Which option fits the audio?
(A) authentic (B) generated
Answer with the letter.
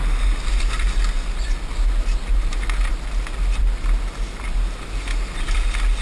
A